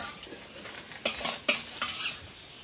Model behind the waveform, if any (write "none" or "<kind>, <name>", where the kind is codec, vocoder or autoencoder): none